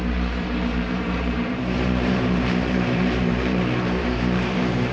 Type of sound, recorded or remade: remade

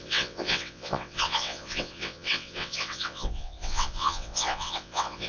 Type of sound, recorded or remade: remade